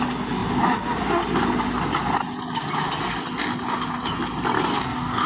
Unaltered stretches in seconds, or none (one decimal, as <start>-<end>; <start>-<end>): 0.0-4.7